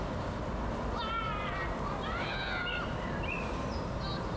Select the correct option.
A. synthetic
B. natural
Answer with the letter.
B